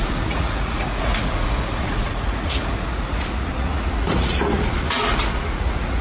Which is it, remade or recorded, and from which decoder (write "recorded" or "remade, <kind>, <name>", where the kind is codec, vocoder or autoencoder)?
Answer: remade, vocoder, Vocos